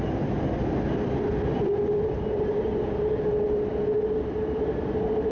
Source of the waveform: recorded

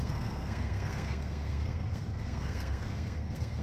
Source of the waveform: remade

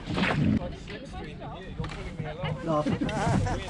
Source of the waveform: recorded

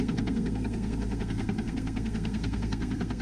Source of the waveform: remade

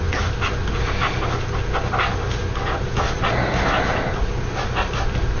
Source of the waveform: recorded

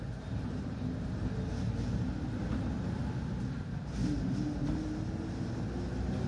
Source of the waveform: recorded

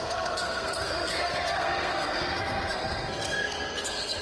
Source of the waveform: remade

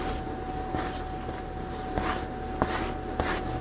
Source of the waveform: recorded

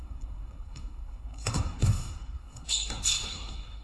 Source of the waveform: remade